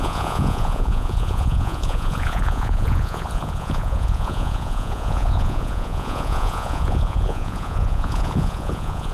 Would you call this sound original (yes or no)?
no